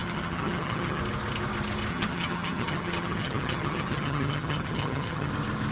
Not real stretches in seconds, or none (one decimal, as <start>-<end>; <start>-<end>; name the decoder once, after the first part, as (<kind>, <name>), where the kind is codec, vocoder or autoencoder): 0.0-1.0 (vocoder, HiFi-GAN); 1.9-5.3